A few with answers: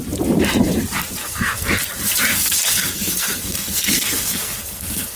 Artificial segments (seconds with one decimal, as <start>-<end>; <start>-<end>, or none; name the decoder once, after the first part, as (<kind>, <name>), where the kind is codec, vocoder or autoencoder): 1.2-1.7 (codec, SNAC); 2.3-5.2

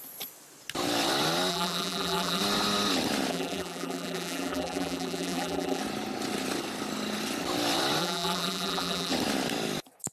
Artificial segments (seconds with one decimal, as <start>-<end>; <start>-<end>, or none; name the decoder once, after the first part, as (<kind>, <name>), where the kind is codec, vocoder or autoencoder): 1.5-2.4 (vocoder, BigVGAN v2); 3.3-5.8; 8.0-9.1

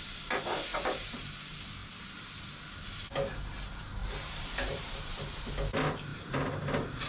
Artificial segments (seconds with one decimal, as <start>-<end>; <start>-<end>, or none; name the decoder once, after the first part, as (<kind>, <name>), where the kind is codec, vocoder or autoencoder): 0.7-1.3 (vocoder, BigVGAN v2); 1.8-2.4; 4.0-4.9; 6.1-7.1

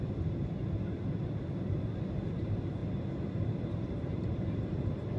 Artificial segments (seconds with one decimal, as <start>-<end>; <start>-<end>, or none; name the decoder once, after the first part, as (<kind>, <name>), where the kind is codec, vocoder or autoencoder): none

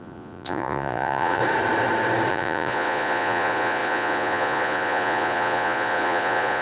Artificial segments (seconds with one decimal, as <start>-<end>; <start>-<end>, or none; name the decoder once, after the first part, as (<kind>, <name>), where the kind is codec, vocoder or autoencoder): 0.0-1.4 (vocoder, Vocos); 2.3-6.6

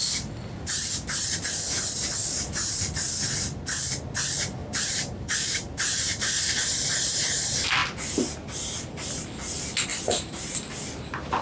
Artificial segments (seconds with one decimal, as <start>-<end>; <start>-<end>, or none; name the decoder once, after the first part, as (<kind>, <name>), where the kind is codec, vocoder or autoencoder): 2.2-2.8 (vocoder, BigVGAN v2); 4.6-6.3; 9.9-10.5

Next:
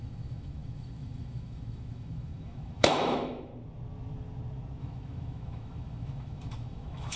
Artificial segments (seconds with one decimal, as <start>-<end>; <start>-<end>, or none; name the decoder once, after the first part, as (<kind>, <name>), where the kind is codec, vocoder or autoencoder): 0.0-3.5 (autoencoder, DAC-VAE); 4.8-7.2

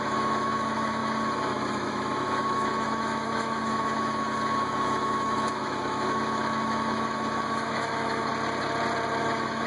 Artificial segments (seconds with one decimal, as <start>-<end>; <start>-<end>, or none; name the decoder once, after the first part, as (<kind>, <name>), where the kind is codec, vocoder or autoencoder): 0.0-8.3 (autoencoder, DAC-VAE); 9.2-9.7